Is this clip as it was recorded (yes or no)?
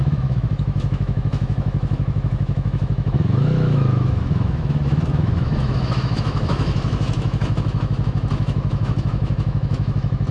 no